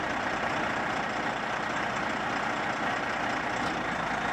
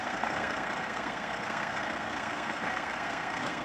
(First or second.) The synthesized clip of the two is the second